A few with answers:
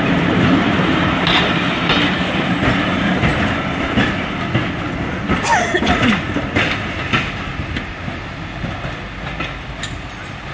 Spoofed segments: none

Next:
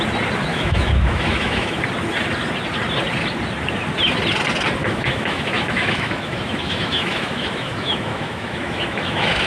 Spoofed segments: 0.5-1.8 (autoencoder, DAC-VAE); 4.8-9.5

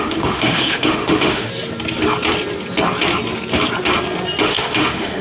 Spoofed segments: 0.0-1.5 (autoencoder, DAC-VAE); 4.4-5.2

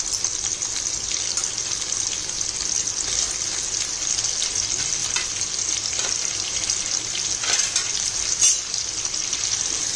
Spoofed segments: none

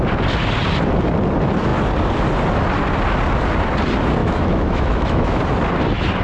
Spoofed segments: 4.2-5.4 (autoencoder, DAC-VAE)